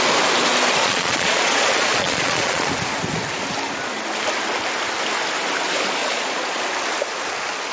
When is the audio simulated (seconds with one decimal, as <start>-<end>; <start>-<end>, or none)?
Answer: 0.8-2.7; 6.0-6.6